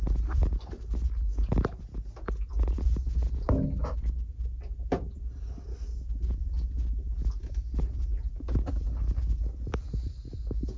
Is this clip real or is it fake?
real